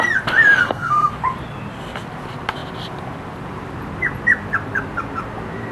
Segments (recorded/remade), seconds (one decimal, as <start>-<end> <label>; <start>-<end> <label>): 0.0-0.6 recorded; 0.6-1.1 remade; 1.1-5.7 recorded